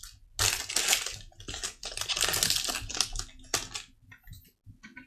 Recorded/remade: recorded